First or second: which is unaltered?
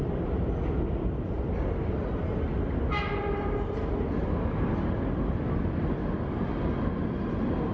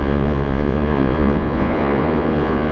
first